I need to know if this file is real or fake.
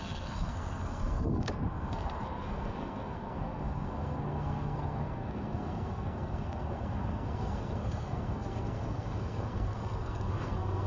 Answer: fake